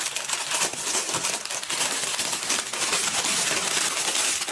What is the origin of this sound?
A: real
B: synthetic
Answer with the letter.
A